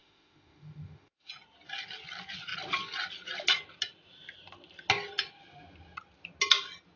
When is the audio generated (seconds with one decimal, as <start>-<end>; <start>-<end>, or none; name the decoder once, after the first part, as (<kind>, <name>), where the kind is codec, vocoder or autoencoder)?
0.0-1.3 (autoencoder, DAC-VAE)